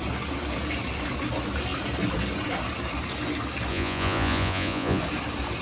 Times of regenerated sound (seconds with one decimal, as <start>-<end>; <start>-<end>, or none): 3.7-5.0